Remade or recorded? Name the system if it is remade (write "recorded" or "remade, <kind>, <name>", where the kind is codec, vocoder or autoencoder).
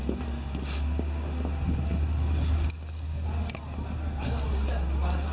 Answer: recorded